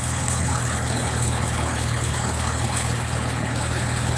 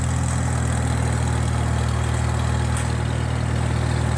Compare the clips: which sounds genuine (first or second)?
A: second